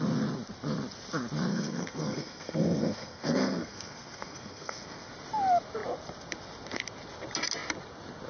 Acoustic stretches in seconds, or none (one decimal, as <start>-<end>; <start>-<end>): 0.0-1.5; 5.1-8.3